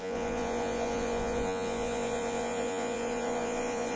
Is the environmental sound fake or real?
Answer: fake